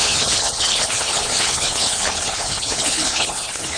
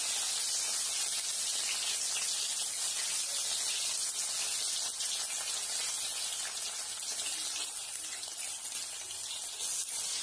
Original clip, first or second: second